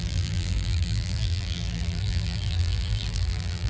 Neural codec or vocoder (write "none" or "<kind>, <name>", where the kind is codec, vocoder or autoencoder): vocoder, BigVGAN v2